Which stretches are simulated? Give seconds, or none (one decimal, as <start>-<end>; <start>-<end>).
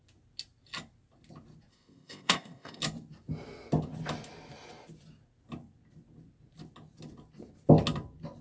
1.7-2.8